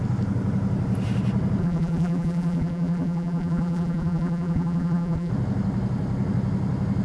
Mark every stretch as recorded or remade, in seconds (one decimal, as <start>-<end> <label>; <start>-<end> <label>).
0.0-1.6 recorded; 1.6-5.3 remade; 5.3-7.0 recorded